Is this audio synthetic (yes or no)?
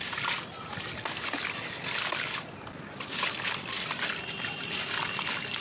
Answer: no